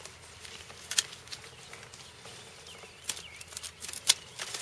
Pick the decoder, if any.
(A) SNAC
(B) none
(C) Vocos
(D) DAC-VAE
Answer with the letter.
B